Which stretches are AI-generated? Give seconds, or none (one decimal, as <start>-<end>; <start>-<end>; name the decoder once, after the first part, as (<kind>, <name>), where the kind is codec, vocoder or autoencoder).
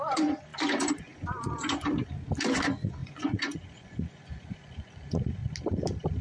0.0-1.9 (vocoder, Vocos); 2.5-5.4